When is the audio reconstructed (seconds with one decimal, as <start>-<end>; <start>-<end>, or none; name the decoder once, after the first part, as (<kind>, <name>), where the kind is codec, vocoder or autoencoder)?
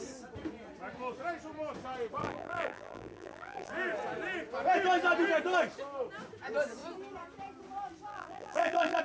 2.2-3.7 (vocoder, BigVGAN v2); 8.1-9.0